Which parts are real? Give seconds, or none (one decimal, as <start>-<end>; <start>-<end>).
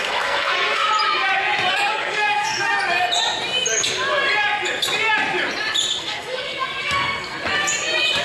0.9-1.7; 2.8-6.0; 7.4-8.2